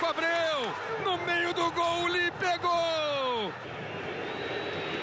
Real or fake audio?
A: real